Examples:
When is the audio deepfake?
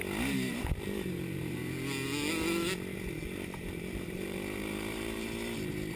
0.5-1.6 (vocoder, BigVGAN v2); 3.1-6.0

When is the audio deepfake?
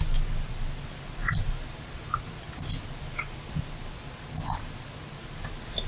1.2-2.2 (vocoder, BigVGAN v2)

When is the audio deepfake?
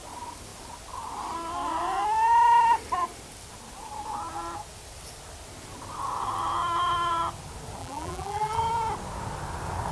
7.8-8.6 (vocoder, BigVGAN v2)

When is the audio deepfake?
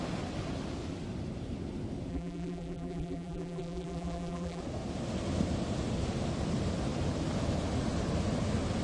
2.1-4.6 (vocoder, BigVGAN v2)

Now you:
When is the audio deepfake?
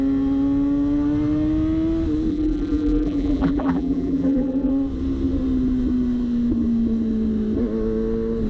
2.3-4.7 (vocoder, BigVGAN v2)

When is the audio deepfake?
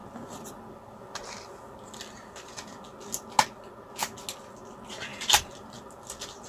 5.1-5.8 (vocoder, BigVGAN v2)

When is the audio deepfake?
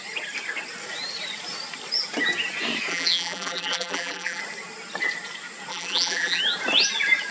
2.9-4.4 (vocoder, BigVGAN v2); 5.7-6.4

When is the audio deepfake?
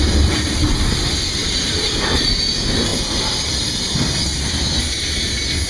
1.4-2.3 (vocoder, BigVGAN v2); 2.9-3.6